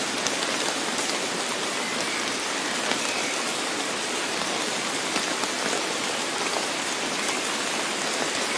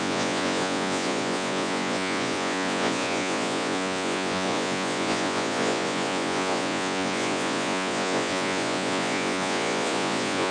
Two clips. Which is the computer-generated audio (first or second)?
second